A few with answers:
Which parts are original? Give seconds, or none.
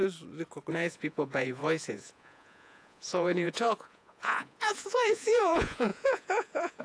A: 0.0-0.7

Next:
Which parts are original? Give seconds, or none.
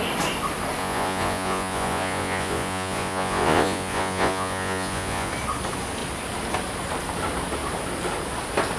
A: 0.0-0.8; 5.3-8.8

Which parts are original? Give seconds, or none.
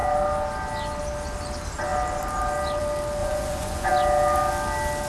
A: 0.0-3.2; 3.9-5.1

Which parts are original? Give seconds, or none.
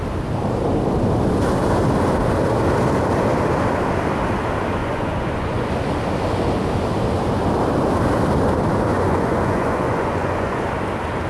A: 0.0-4.8; 5.7-8.9; 10.6-11.3